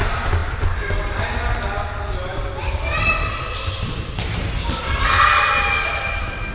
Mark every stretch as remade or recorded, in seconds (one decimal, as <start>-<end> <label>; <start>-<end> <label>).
0.0-6.5 recorded